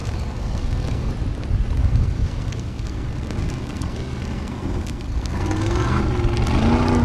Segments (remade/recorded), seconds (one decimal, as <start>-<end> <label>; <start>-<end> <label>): 0.0-1.1 remade; 1.1-1.8 recorded; 1.8-6.0 remade; 6.0-7.0 recorded